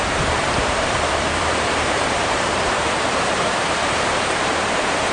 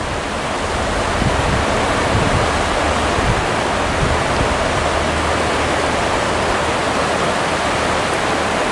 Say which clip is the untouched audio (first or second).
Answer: second